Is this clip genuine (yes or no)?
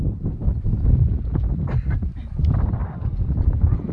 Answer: yes